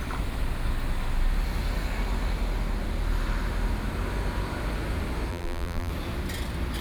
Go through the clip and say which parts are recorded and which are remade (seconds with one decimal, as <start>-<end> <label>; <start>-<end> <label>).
0.0-5.3 recorded; 5.3-5.9 remade; 5.9-6.8 recorded